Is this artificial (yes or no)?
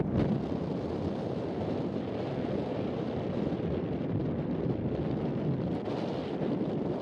no